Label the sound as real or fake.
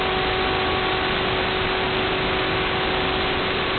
real